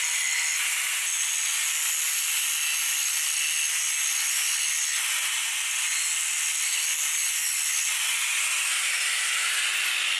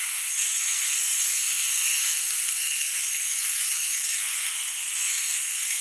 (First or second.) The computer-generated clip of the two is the second